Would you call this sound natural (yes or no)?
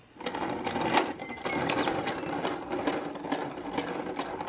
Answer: yes